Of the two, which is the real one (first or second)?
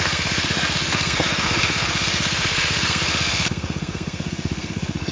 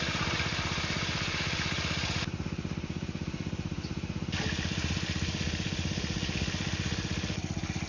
second